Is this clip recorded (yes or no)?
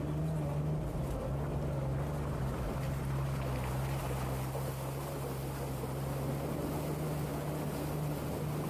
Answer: yes